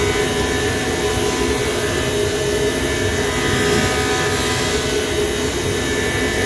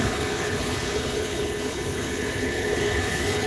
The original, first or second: first